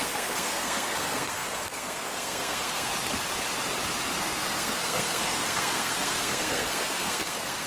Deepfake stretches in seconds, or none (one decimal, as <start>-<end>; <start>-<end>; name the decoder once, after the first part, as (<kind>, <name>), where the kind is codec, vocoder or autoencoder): 0.0-2.9 (codec, SNAC); 4.2-7.7

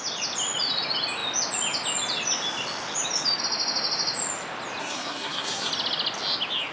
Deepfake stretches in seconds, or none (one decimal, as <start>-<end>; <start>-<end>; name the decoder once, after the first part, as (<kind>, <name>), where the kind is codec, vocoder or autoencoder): 4.8-5.7 (codec, SNAC)

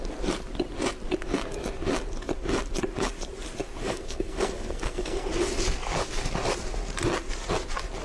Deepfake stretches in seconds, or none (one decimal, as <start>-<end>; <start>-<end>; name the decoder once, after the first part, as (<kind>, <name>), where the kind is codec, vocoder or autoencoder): 3.8-5.3 (codec, SNAC)

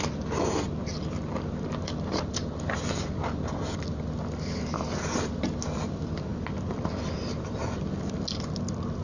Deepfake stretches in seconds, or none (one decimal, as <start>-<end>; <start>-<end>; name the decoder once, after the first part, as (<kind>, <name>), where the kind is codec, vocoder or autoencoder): none

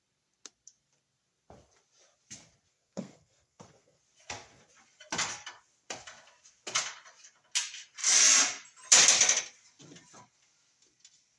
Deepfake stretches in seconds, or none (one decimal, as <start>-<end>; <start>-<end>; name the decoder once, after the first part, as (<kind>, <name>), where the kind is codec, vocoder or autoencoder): 2.7-4.0 (codec, SNAC)